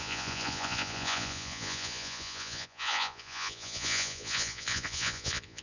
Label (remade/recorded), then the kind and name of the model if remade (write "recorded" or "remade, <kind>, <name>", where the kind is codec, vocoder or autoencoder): remade, vocoder, Vocos